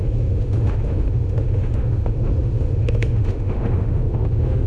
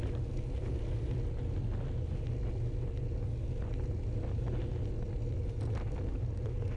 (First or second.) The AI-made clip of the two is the first